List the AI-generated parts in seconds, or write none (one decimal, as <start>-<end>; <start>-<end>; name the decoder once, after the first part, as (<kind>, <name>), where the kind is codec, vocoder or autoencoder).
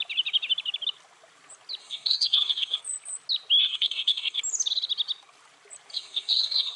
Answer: 1.8-2.8 (codec, SNAC); 3.6-4.4; 5.9-6.8